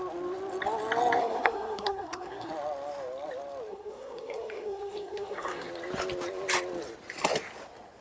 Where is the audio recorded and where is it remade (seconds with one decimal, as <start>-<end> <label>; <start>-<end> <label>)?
0.0-1.2 recorded; 1.2-2.5 remade; 2.5-3.7 recorded; 3.7-5.7 remade; 5.7-8.0 recorded